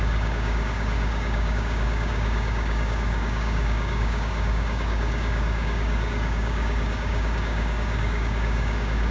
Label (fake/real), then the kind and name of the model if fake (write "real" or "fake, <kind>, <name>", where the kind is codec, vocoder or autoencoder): fake, codec, DAC